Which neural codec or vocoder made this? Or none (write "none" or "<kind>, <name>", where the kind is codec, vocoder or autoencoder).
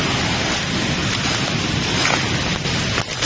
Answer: none